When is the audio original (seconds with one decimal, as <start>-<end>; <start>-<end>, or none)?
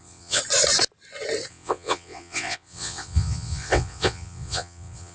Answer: 0.4-1.5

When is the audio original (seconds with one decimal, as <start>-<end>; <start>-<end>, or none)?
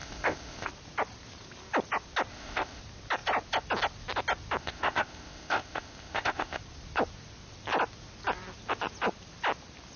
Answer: 0.7-2.3; 2.8-4.6; 6.6-10.0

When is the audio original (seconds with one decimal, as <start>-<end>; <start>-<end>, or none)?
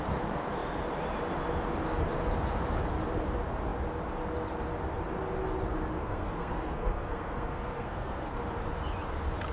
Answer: 0.0-6.0; 8.4-9.5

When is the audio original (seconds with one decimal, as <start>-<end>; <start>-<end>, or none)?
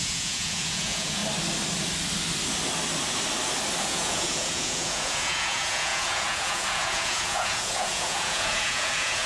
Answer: 1.2-3.8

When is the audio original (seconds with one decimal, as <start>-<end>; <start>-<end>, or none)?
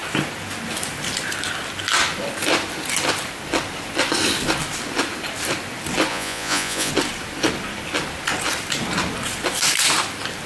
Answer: 0.0-6.1; 6.9-10.5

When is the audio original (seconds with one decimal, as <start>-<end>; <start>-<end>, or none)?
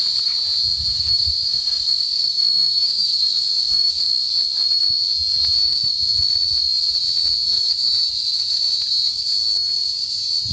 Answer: 0.0-0.9; 4.3-5.7; 6.3-7.5; 8.7-10.5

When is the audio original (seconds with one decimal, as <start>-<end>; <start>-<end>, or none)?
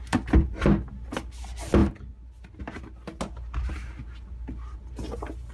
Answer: 0.0-5.5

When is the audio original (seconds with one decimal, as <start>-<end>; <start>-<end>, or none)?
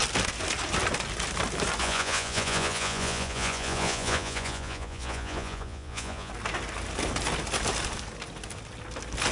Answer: 0.0-1.8; 6.3-9.3